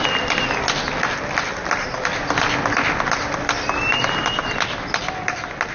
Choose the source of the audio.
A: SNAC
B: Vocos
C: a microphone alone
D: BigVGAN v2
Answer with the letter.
C